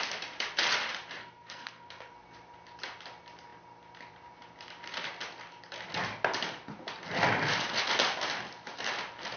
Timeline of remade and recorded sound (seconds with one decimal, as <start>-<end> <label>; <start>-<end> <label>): 0.0-1.2 recorded; 1.2-2.1 remade; 2.1-9.4 recorded